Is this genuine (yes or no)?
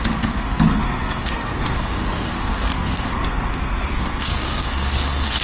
no